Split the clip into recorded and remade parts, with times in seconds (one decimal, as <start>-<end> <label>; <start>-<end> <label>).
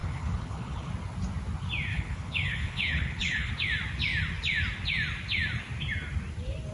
0.0-0.9 remade; 0.9-1.9 recorded; 1.9-3.5 remade; 3.5-6.7 recorded